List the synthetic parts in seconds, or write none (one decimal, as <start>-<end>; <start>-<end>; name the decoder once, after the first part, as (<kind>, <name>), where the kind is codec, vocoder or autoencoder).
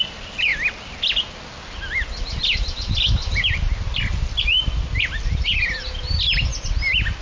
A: none